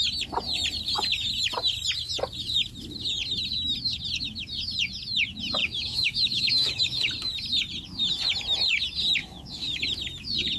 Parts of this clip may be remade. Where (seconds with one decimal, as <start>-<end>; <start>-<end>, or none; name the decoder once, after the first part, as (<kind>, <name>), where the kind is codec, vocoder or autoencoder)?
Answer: 5.6-7.1 (autoencoder, DAC-VAE); 9.2-9.8